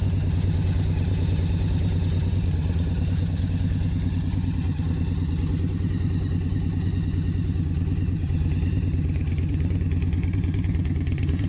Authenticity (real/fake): fake